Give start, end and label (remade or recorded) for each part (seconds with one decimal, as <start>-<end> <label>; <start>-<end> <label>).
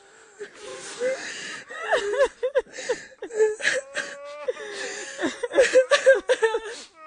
0.0-0.7 recorded; 0.7-2.0 remade; 2.0-5.0 recorded; 5.0-5.7 remade; 5.7-7.1 recorded